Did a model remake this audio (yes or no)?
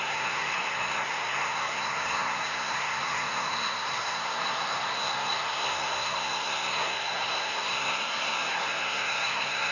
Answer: yes